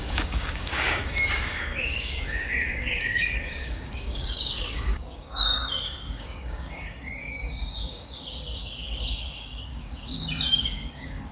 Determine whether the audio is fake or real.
fake